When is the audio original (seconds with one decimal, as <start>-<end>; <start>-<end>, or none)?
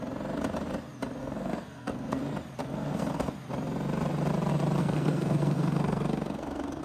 0.0-1.2; 2.2-2.6; 3.3-4.8